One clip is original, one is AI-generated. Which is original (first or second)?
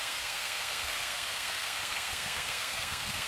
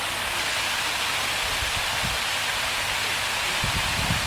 second